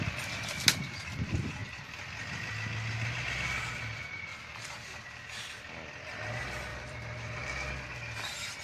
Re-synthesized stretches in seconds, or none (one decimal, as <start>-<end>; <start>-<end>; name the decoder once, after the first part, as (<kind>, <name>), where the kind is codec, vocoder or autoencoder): 1.6-2.4 (vocoder, BigVGAN v2); 4.3-5.2; 6.7-7.7